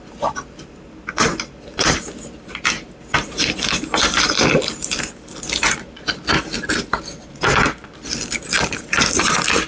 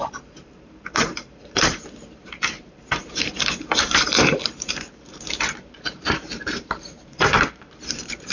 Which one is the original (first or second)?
first